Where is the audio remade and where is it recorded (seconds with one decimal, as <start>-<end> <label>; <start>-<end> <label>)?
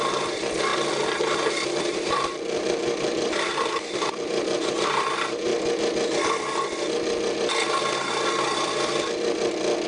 0.0-0.7 remade; 0.7-1.2 recorded; 1.2-3.1 remade; 3.1-3.6 recorded; 3.6-5.5 remade; 5.5-9.9 recorded